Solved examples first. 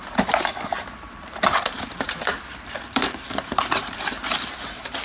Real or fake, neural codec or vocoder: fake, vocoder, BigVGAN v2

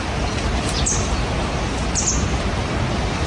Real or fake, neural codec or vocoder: real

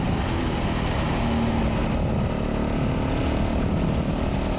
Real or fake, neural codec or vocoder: real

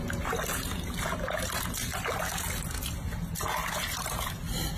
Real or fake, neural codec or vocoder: real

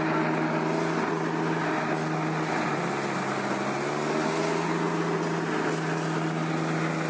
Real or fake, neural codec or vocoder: real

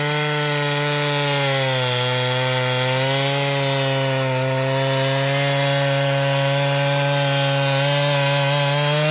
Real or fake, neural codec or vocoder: real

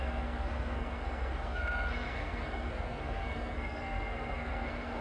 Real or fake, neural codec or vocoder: fake, codec, SNAC